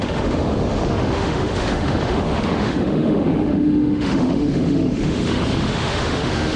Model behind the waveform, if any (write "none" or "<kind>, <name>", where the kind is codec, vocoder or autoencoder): autoencoder, DAC-VAE